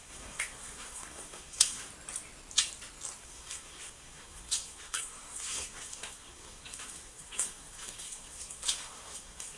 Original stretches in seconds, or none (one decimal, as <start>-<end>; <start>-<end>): 1.9-3.2